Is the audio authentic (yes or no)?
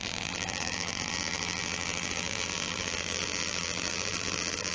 no